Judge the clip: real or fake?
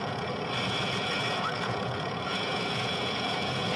fake